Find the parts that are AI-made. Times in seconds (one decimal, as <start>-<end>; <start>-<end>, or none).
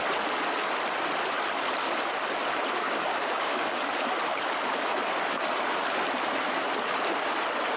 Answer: 2.8-3.7